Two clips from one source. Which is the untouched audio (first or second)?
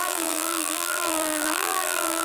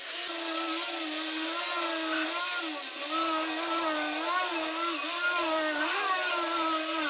second